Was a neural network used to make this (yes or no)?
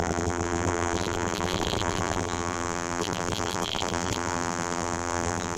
yes